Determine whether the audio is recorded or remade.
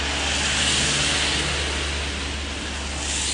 recorded